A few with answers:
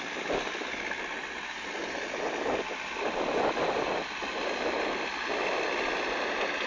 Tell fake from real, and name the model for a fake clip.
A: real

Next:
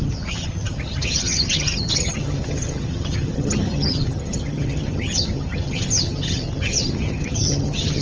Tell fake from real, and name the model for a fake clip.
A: fake, vocoder, HiFi-GAN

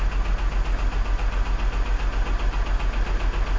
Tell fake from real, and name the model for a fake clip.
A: real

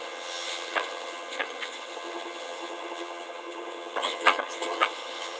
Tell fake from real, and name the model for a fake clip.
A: fake, vocoder, HiFi-GAN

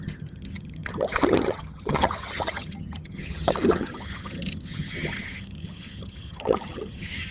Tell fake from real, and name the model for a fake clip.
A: fake, vocoder, HiFi-GAN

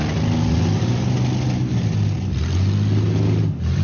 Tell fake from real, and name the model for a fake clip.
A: real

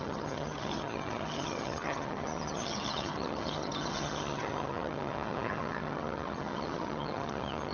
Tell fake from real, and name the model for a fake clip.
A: fake, vocoder, HiFi-GAN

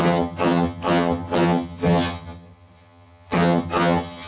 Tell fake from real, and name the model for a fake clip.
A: fake, vocoder, HiFi-GAN